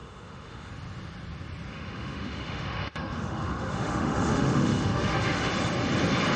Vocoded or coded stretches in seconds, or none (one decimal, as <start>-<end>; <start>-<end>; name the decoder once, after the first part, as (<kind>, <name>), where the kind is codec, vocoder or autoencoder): 0.0-0.7 (autoencoder, DAC-VAE); 1.7-5.5